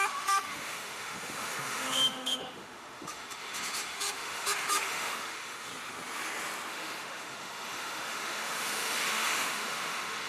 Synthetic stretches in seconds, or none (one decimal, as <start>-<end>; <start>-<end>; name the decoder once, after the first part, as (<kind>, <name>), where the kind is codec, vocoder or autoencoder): 0.0-5.7 (autoencoder, DAC-VAE); 6.7-10.3